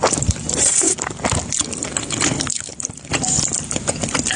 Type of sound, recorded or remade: recorded